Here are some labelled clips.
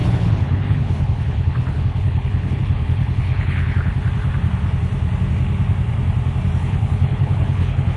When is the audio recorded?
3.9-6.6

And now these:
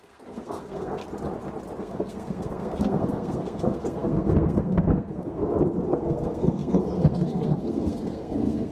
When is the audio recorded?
1.0-1.8; 5.4-5.9